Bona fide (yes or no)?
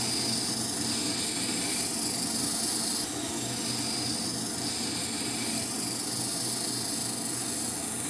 yes